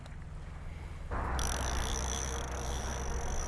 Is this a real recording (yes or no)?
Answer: yes